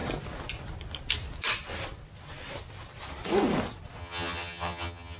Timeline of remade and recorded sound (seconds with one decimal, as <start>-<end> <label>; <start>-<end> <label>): 0.0-4.0 recorded; 4.0-5.2 remade